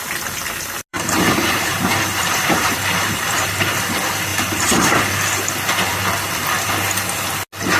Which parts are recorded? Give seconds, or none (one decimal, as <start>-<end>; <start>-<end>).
0.0-0.9; 3.6-4.3; 5.1-7.8